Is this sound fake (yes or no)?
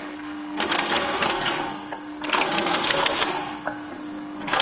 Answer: yes